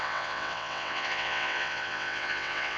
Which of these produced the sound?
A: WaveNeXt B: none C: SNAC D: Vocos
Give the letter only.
A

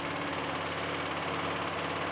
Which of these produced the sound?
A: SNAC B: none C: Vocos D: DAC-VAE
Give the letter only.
B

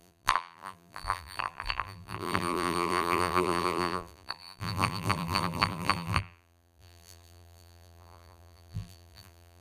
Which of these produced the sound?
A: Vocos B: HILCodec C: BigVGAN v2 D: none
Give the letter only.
C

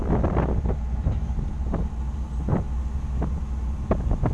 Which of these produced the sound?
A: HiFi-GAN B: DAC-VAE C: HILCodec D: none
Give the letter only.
D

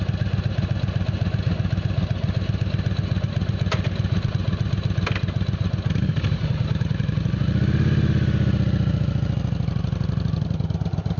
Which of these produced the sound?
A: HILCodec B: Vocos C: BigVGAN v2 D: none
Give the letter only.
D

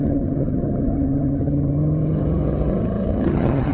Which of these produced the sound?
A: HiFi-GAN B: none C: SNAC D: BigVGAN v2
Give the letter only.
A